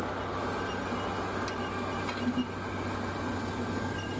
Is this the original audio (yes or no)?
yes